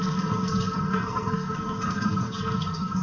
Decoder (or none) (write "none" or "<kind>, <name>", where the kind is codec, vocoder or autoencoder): codec, SNAC